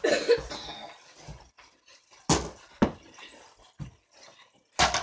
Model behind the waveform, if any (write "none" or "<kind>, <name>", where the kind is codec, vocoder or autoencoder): none